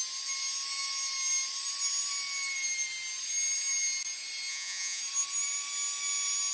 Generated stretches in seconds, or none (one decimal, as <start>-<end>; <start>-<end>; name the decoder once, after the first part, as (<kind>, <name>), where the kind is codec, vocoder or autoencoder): 4.5-5.0 (vocoder, Vocos)